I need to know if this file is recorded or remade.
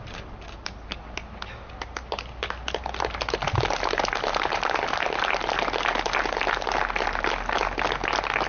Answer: recorded